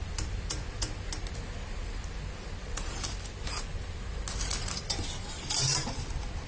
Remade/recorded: recorded